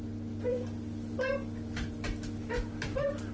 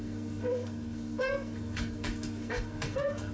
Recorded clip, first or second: first